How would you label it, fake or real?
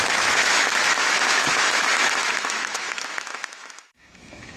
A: fake